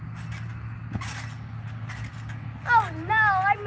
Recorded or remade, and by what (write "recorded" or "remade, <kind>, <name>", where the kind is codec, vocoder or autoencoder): recorded